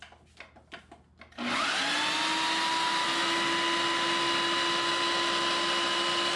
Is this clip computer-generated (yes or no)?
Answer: no